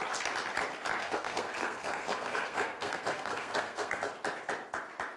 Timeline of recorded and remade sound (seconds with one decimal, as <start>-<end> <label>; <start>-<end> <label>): 0.0-1.0 recorded; 1.0-4.1 remade; 4.1-5.2 recorded